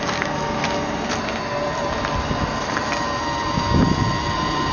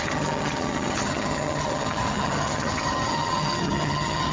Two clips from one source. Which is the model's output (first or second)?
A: second